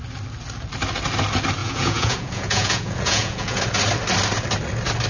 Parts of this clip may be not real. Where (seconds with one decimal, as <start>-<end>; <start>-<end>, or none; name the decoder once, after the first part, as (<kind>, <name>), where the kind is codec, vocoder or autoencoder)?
1.6-3.6 (vocoder, Vocos)

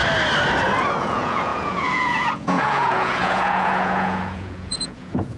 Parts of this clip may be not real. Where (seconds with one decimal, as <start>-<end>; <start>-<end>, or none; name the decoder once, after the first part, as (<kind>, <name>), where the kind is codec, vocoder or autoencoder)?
1.0-5.4 (vocoder, Vocos)

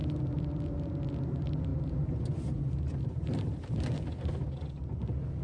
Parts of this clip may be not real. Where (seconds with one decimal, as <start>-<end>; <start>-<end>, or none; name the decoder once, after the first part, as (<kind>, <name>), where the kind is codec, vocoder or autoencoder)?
none

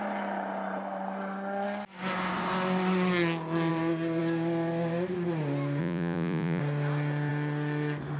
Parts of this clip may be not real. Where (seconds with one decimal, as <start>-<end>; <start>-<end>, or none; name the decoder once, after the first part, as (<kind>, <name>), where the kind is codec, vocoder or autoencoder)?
5.8-6.6 (vocoder, Vocos)

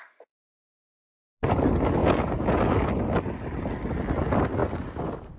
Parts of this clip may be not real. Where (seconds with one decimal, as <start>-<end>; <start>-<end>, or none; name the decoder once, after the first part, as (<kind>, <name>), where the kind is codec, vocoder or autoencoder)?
2.0-2.6 (vocoder, Vocos)

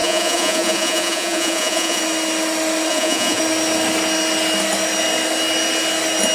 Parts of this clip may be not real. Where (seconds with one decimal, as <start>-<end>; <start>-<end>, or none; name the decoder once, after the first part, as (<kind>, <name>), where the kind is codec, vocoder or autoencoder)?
0.0-2.0 (vocoder, Vocos); 2.9-3.4

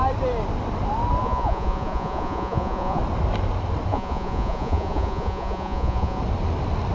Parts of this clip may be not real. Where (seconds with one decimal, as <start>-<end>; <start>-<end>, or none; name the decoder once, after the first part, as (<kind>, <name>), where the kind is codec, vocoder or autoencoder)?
1.2-3.0 (vocoder, Vocos); 3.9-6.2

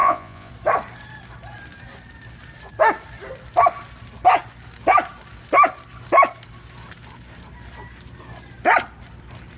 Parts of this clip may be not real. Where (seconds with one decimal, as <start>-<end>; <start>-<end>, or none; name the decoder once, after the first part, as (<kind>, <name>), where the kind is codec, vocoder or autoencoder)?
0.0-0.5 (vocoder, Vocos)